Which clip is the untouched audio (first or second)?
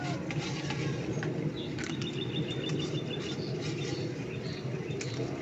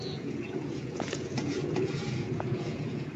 first